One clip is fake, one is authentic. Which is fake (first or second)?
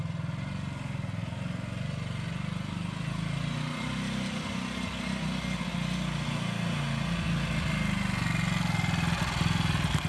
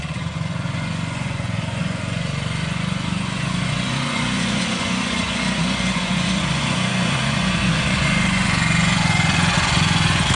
second